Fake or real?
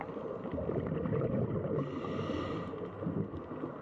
real